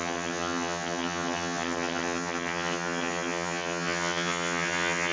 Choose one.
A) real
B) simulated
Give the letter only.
B